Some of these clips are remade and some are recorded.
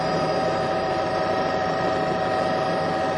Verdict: remade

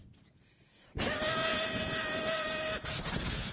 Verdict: remade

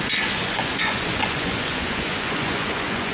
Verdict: remade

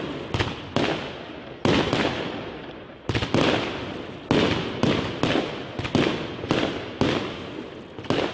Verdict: recorded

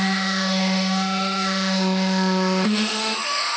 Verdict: remade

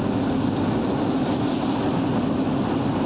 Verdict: recorded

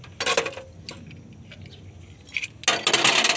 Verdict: recorded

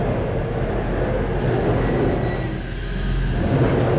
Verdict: recorded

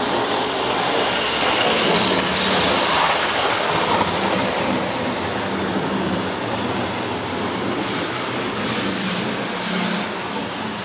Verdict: recorded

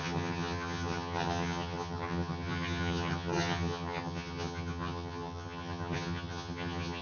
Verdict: remade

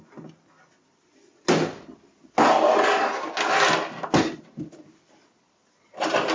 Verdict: recorded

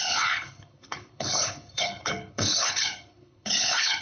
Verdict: remade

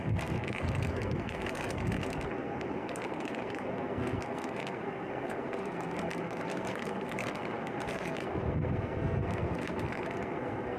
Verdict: remade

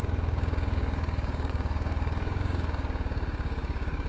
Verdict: remade